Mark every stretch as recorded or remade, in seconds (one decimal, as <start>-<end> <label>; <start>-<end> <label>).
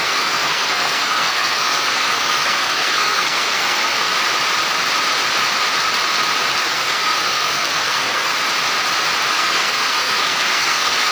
0.0-4.1 remade; 4.1-6.6 recorded; 6.6-8.3 remade; 8.3-9.3 recorded; 9.3-11.1 remade